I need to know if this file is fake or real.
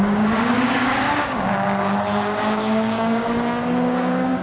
fake